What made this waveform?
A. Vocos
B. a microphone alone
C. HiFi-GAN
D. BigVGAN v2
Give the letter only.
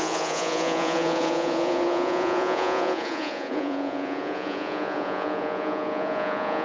A